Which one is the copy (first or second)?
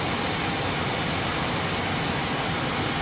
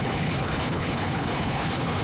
second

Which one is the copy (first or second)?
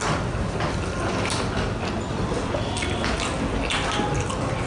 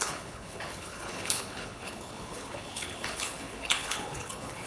second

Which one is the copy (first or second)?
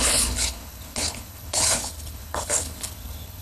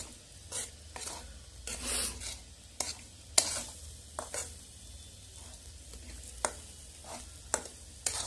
first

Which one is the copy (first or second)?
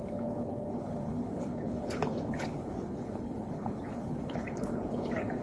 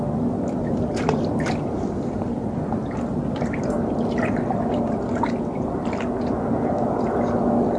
first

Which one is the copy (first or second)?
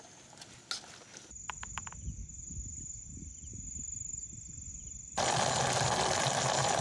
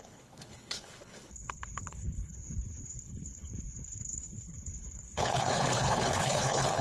second